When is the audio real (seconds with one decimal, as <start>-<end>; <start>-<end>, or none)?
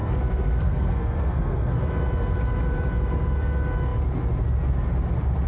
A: 1.8-5.5